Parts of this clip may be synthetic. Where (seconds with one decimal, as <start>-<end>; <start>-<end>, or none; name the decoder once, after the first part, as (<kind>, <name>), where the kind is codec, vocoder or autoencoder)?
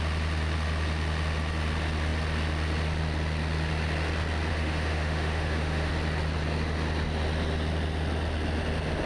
4.5-5.9 (autoencoder, DAC-VAE)